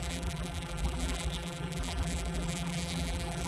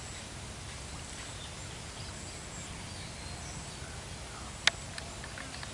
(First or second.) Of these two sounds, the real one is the second